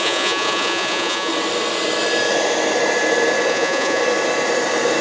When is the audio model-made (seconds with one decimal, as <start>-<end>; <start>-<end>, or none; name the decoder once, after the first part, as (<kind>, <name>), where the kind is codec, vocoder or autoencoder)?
0.0-1.3 (vocoder, Vocos); 3.5-4.0